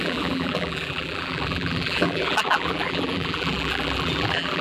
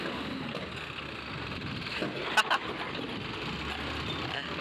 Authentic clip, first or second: second